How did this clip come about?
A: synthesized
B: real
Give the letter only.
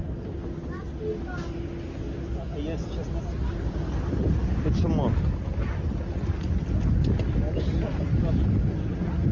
B